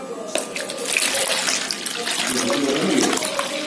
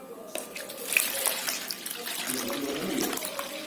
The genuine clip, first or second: first